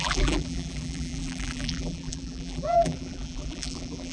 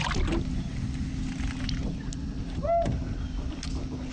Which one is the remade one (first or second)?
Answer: first